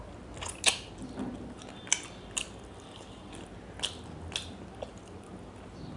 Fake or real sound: real